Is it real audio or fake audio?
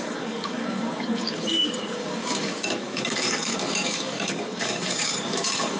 fake